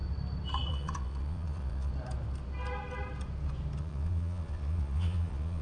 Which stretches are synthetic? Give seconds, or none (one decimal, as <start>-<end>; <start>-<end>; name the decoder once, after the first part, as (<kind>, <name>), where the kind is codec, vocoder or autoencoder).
0.7-1.9 (vocoder, Vocos); 3.8-5.6